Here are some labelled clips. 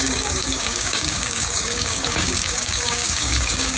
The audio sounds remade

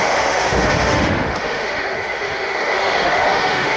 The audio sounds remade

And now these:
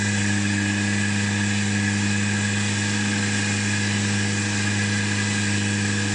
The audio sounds recorded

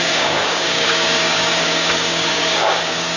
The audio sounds remade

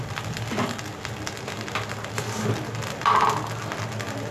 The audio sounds recorded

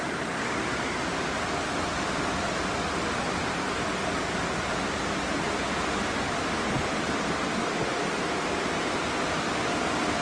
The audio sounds recorded